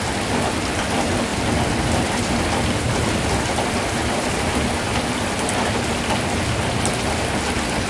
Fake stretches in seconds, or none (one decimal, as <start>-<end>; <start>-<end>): 1.3-6.0